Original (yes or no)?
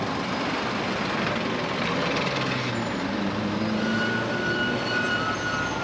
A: yes